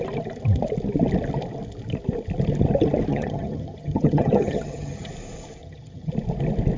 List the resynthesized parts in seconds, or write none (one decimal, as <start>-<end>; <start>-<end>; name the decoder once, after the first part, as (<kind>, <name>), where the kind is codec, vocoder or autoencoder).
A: 3.1-5.1 (vocoder, HiFi-GAN); 5.6-6.1